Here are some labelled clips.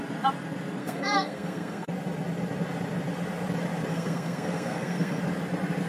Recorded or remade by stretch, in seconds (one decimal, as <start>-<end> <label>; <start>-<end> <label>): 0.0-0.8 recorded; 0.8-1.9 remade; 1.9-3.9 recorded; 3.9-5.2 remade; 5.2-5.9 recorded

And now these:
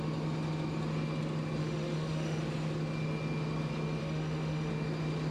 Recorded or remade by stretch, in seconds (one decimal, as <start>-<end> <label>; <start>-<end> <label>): 0.0-1.6 recorded; 1.6-2.4 remade; 2.4-4.0 recorded; 4.0-4.7 remade; 4.7-5.3 recorded

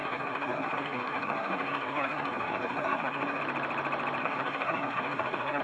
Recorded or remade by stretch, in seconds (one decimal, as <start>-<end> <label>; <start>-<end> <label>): 0.0-3.4 remade; 3.4-4.2 recorded; 4.2-5.6 remade

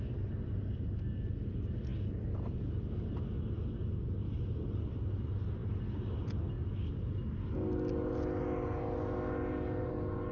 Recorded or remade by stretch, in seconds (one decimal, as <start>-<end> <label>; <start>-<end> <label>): 0.0-10.3 recorded

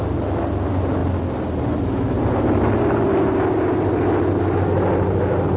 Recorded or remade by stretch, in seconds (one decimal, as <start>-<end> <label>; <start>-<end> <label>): 0.0-5.6 recorded

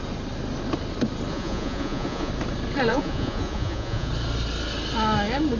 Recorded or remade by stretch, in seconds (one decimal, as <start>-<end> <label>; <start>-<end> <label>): 0.0-1.3 recorded; 1.3-2.3 remade; 2.3-2.9 recorded; 2.9-4.1 remade; 4.1-5.6 recorded

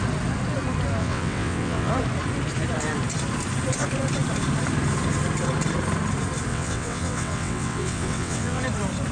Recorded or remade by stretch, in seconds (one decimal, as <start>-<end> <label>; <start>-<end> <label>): 0.0-1.0 recorded; 1.0-1.9 remade; 1.9-6.5 recorded; 6.5-8.6 remade; 8.6-9.1 recorded